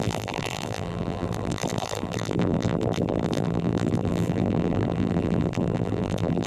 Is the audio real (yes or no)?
no